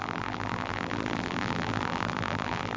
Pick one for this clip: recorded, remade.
remade